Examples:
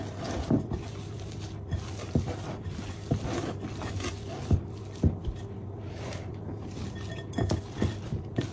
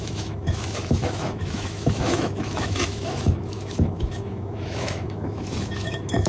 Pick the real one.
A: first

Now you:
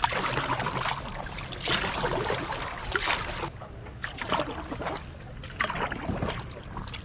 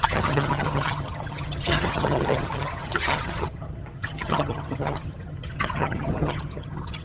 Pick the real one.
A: first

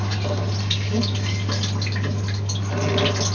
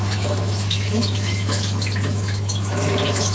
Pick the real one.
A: first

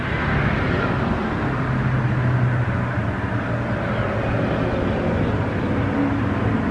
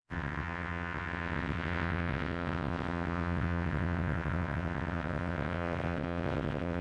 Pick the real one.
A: first